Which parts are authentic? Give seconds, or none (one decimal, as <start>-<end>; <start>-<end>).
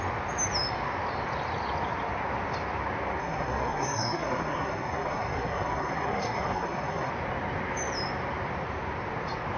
0.0-3.2; 7.1-9.6